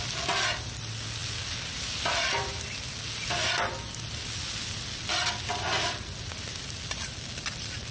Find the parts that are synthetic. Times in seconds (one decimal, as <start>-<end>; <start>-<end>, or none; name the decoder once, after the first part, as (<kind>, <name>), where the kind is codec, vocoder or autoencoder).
none